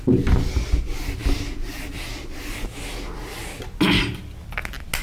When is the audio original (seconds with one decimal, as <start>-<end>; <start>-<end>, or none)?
0.0-5.0